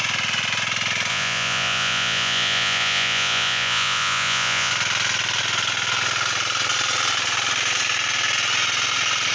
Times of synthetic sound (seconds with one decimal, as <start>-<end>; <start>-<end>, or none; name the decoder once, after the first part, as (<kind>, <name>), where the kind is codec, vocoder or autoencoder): 1.1-4.7 (vocoder, Vocos)

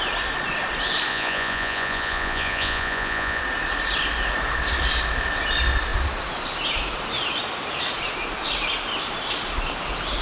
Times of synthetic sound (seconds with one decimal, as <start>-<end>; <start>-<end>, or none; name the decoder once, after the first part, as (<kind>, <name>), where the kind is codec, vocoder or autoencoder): 1.1-3.4 (vocoder, Vocos)

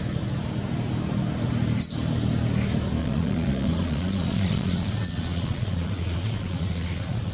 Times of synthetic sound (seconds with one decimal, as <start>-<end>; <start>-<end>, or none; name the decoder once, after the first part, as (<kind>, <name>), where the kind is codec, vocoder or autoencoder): 3.0-7.3 (vocoder, Vocos)

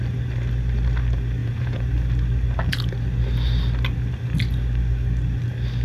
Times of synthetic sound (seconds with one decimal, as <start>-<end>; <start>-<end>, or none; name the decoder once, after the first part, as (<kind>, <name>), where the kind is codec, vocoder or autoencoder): 1.4-1.9 (vocoder, Vocos)

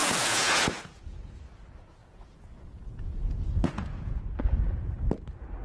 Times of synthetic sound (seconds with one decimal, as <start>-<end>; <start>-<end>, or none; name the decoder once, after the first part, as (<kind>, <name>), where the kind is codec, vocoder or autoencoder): 0.0-1.0 (vocoder, Vocos); 2.0-4.2

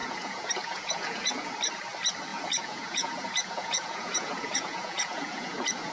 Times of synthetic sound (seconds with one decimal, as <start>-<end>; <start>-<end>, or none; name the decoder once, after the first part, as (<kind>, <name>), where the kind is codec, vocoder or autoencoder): 0.0-1.5 (vocoder, Vocos); 2.3-5.9

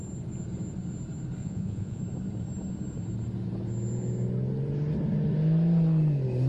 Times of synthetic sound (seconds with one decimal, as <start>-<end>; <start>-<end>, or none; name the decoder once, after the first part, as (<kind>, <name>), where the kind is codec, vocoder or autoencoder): 1.4-2.0 (vocoder, Vocos)